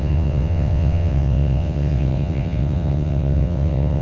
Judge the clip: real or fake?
fake